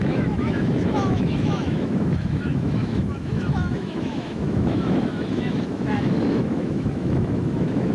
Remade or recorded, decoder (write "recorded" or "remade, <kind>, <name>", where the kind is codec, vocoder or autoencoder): remade, autoencoder, DAC-VAE